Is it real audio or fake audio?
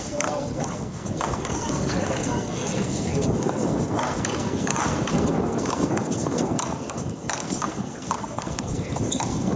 fake